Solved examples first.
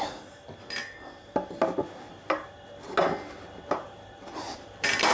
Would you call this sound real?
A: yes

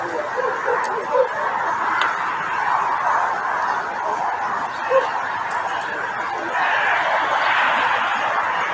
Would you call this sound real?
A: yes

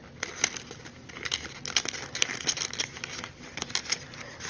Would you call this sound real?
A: yes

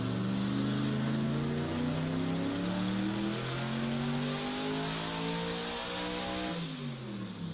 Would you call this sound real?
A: yes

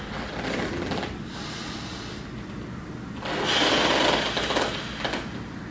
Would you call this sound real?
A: yes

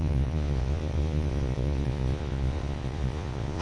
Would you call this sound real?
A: no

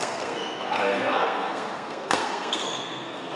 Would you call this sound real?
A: no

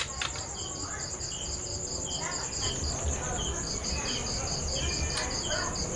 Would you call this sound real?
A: yes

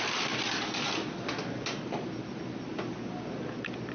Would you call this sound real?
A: yes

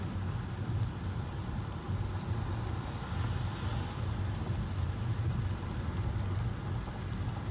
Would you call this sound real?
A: yes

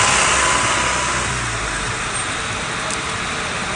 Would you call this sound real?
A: yes